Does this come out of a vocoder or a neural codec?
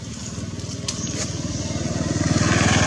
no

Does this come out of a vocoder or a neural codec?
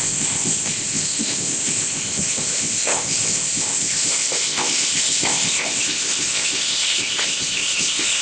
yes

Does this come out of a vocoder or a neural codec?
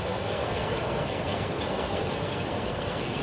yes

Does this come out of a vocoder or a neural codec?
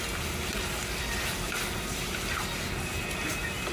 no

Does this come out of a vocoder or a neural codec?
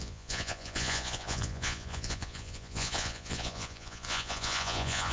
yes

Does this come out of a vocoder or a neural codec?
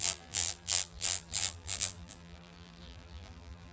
yes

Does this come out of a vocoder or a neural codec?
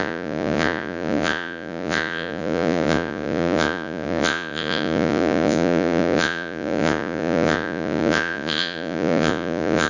yes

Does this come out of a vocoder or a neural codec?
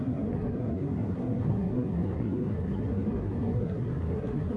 yes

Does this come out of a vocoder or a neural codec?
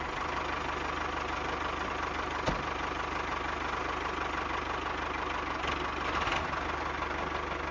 no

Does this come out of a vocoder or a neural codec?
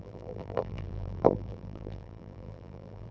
yes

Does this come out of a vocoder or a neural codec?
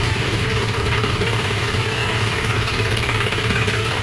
yes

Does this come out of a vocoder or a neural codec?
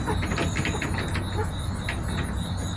no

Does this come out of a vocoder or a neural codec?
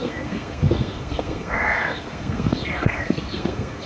yes